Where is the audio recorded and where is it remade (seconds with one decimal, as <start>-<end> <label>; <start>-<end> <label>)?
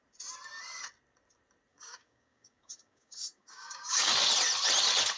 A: 0.0-1.7 recorded; 1.7-4.1 remade; 4.1-5.2 recorded